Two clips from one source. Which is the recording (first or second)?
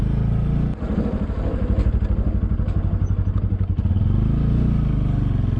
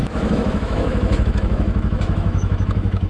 first